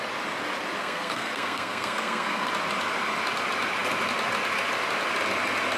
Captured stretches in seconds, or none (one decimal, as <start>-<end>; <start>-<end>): 0.0-0.8; 2.5-5.8